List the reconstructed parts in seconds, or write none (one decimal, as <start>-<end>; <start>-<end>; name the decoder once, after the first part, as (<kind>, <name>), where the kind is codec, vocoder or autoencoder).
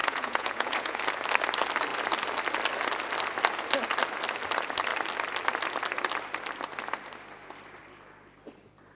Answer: 0.0-1.0 (vocoder, Vocos)